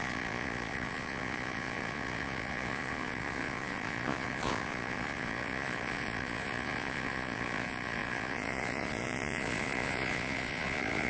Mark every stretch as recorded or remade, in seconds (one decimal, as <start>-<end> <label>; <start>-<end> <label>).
0.0-11.1 remade